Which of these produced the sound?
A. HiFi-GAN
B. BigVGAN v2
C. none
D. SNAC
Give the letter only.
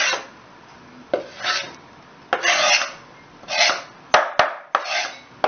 C